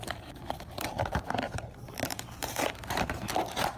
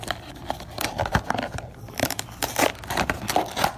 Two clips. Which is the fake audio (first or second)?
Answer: first